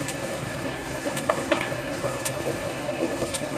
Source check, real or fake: fake